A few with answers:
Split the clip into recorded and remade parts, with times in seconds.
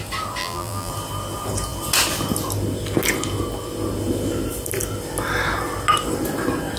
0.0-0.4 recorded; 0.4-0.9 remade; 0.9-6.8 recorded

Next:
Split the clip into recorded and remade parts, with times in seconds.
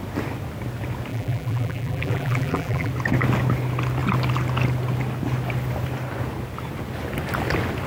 0.0-1.1 recorded; 1.1-2.9 remade; 2.9-7.9 recorded